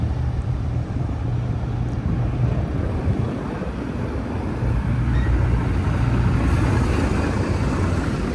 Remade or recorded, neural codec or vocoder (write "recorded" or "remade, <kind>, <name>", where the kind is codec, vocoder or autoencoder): recorded